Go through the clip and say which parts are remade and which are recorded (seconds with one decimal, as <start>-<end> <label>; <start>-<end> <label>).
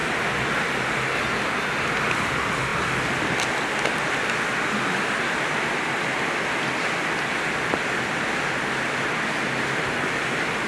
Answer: 0.0-10.7 recorded